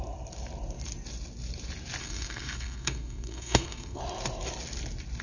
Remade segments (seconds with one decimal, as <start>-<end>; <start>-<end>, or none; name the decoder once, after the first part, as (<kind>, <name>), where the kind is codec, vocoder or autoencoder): 2.0-4.0 (codec, SNAC)